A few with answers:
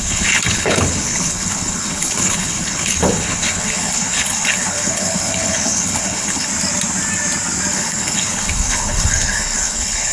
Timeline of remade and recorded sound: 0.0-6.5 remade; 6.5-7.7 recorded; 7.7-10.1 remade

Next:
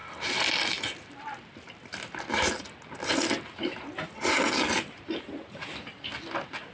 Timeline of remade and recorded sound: 0.0-6.7 recorded